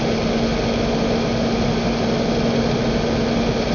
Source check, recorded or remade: recorded